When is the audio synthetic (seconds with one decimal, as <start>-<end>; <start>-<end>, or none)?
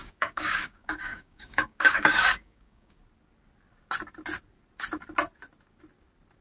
0.0-3.0